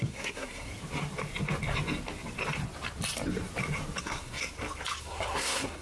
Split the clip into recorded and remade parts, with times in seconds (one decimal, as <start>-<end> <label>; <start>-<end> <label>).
0.0-0.7 remade; 0.7-4.0 recorded; 4.0-4.4 remade; 4.4-5.0 recorded; 5.0-5.8 remade